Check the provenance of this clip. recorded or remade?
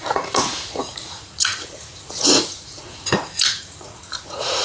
remade